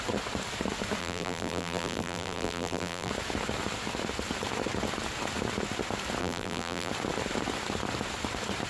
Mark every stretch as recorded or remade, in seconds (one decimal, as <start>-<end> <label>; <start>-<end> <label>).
0.0-1.0 recorded; 1.0-3.1 remade; 3.1-6.2 recorded; 6.2-6.9 remade; 6.9-8.7 recorded